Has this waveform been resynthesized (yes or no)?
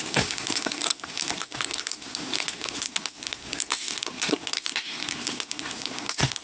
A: yes